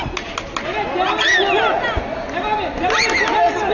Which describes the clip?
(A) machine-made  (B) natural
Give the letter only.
B